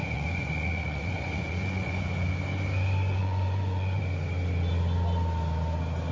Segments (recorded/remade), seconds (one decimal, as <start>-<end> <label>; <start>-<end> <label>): 0.0-2.0 remade; 2.0-3.2 recorded; 3.2-4.0 remade; 4.0-6.1 recorded